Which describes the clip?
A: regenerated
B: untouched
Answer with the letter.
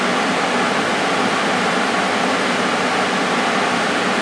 B